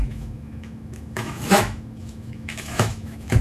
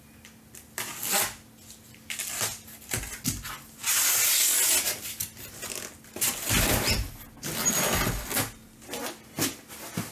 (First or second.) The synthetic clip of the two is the first